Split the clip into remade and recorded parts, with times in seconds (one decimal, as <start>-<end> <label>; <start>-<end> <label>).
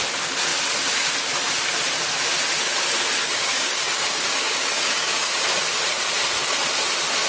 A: 0.0-3.2 recorded; 3.2-5.3 remade; 5.3-7.3 recorded